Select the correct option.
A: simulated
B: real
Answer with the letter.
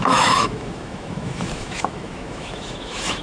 A